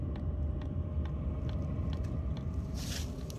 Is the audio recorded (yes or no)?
yes